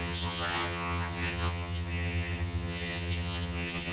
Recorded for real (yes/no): no